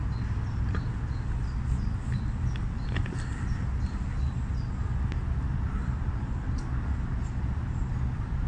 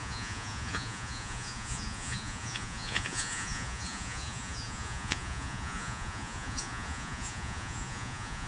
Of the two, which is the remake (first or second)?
second